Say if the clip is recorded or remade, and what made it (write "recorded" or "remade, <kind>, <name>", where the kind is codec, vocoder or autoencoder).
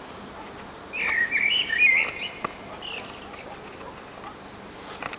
recorded